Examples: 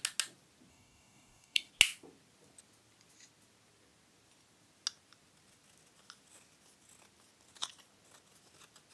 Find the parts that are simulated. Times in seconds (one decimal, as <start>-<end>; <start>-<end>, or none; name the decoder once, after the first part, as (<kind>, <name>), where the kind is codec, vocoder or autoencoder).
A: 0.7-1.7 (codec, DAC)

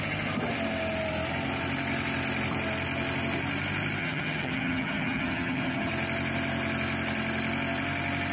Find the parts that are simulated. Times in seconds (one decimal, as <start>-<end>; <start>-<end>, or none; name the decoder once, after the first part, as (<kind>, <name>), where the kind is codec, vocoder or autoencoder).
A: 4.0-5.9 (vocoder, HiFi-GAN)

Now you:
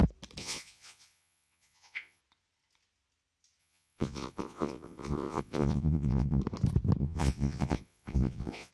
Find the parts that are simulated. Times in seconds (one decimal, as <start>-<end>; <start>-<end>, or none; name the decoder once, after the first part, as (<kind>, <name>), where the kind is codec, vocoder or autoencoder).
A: 0.4-2.2 (vocoder, Vocos); 3.6-6.4; 7.0-8.7

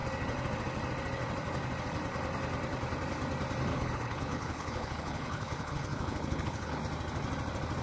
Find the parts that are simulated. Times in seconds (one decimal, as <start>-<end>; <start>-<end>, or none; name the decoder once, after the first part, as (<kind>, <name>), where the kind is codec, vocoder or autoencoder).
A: 3.7-6.8 (codec, HILCodec)

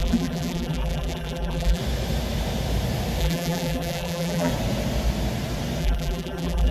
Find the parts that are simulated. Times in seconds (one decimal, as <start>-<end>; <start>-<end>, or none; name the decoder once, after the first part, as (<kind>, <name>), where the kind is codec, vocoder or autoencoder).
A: 0.0-1.8 (vocoder, BigVGAN v2); 3.2-4.5; 5.8-6.7

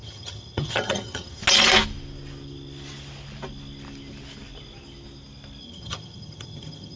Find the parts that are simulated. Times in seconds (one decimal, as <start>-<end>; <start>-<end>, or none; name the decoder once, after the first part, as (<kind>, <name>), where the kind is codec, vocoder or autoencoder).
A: 0.0-1.4 (vocoder, HiFi-GAN); 5.6-7.0

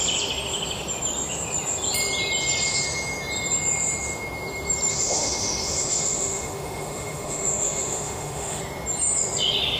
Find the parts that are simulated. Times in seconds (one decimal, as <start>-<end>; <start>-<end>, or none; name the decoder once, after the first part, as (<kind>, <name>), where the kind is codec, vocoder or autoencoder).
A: 4.9-8.6 (autoencoder, DAC-VAE)